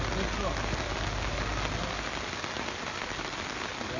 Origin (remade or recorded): recorded